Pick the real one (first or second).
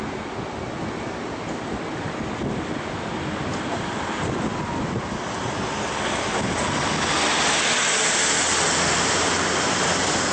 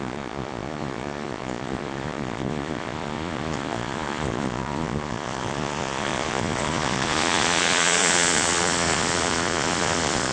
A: first